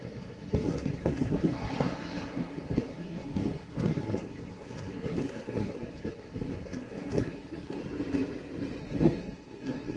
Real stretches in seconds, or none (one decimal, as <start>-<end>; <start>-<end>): 7.8-8.8